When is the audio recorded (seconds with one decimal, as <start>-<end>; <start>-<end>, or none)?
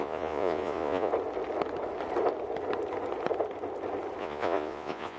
1.1-4.2